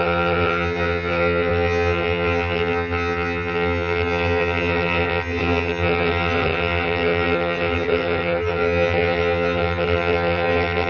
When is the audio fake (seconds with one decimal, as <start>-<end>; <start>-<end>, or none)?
0.0-10.9